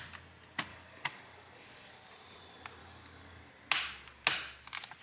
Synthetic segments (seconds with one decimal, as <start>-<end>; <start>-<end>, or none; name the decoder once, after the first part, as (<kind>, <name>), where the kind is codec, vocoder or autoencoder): 0.7-1.9 (codec, DAC); 2.8-3.5

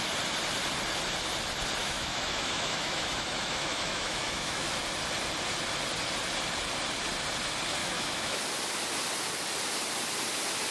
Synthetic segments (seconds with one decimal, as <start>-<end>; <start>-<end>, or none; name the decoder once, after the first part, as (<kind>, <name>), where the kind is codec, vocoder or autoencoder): 1.8-4.8 (autoencoder, DAC-VAE); 7.8-8.4

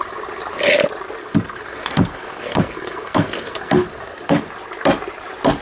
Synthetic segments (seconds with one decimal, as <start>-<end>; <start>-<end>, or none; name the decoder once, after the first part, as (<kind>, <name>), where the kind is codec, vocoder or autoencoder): 1.2-4.5 (codec, SNAC)

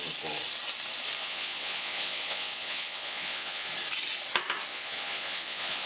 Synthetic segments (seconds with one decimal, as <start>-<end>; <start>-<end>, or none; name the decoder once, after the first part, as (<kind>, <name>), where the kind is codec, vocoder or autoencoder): 1.2-3.7 (vocoder, Vocos); 4.7-5.9

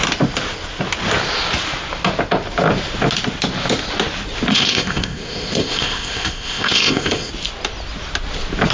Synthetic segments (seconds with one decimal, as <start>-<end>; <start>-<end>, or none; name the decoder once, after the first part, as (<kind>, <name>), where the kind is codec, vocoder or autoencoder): 4.5-7.3 (codec, ZipCodec)

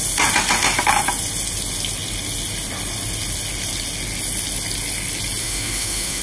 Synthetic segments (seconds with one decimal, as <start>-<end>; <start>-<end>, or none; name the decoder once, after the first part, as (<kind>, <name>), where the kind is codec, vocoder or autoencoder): 5.4-6.2 (autoencoder, DAC-VAE)

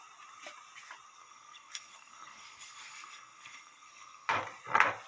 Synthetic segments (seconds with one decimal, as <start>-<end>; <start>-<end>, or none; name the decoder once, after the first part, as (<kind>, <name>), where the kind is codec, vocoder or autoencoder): 1.2-4.3 (codec, SNAC)